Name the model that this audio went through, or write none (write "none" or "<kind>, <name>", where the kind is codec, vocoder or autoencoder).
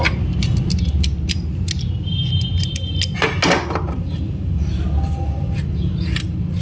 none